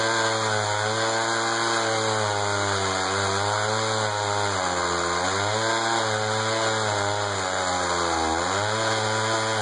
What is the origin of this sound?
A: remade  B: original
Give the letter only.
B